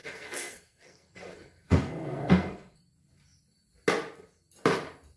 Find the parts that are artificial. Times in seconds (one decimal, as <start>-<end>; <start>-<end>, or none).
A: 0.0-2.8